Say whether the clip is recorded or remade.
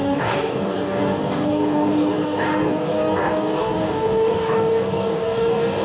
remade